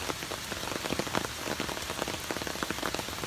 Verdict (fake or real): real